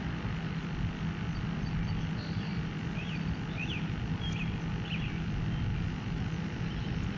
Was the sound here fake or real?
real